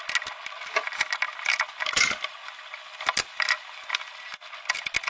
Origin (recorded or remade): recorded